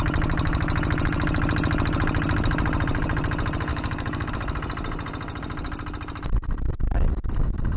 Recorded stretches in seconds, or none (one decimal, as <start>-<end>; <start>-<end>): 0.0-3.7; 4.3-7.8